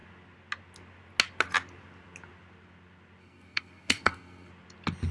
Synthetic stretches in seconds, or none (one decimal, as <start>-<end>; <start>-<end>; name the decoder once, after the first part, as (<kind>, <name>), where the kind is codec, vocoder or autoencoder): 3.2-4.5 (codec, SNAC)